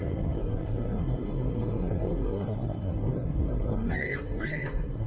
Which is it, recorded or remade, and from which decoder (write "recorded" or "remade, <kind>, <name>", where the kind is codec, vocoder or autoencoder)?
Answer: remade, codec, SNAC